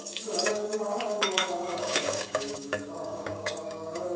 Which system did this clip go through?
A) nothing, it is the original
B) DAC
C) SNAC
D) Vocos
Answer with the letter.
B